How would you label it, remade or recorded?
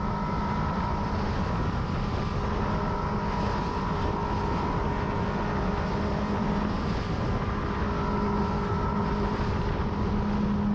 recorded